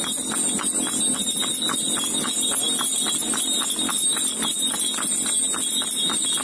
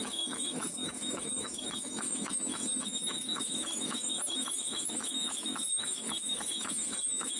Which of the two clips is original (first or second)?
first